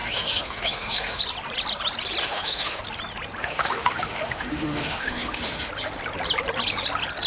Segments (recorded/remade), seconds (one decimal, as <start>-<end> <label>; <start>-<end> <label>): 0.0-1.2 remade; 1.2-2.2 recorded; 2.2-2.8 remade; 2.8-3.4 recorded; 3.4-5.7 remade; 5.7-7.3 recorded